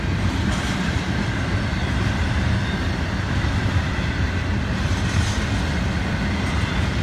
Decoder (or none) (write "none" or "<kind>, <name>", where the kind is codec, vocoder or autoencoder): none